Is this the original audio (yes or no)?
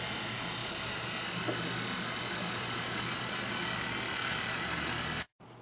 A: yes